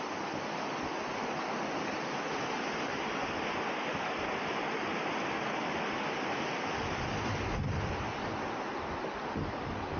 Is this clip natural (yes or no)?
yes